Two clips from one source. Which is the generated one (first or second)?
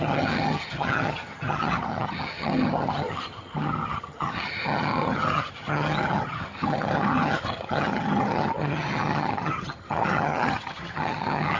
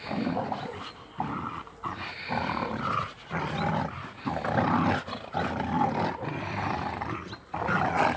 first